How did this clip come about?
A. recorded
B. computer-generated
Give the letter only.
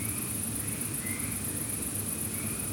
A